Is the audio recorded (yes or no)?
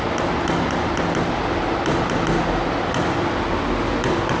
yes